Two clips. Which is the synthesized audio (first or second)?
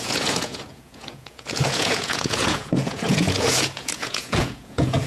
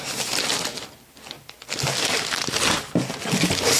first